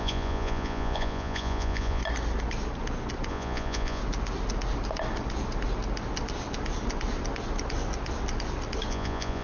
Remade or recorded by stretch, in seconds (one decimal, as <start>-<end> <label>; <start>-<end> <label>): 0.0-2.0 remade; 2.0-3.3 recorded; 3.3-4.0 remade; 4.0-8.9 recorded; 8.9-9.4 remade